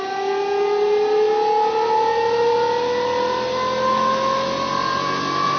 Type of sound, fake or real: real